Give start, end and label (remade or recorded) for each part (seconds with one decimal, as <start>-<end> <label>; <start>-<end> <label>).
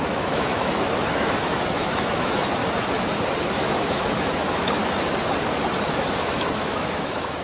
0.0-2.6 remade; 2.6-3.4 recorded; 3.4-4.8 remade; 4.8-5.9 recorded; 5.9-7.4 remade